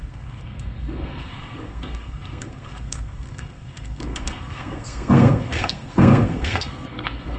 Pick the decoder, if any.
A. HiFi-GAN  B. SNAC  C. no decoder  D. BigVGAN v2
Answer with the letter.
B